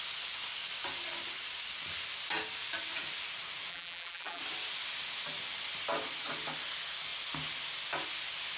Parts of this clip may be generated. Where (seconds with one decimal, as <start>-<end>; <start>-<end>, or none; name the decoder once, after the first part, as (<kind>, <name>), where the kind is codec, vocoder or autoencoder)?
3.7-4.4 (vocoder, BigVGAN v2)